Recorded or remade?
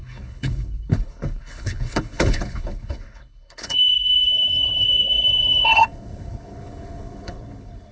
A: remade